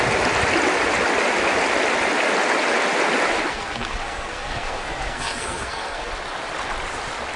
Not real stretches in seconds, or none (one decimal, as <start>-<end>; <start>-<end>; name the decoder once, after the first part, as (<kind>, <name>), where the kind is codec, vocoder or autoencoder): 3.5-6.1 (codec, SNAC)